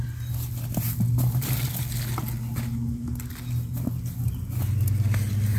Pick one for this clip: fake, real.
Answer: real